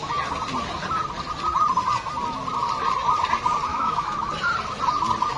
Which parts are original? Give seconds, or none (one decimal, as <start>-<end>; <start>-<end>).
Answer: 0.0-3.7; 4.3-5.4